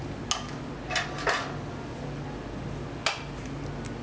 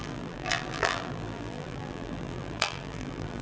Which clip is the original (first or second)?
first